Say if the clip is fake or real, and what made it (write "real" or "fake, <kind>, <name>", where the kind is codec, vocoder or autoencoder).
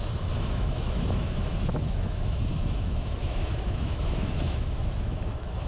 fake, autoencoder, DAC-VAE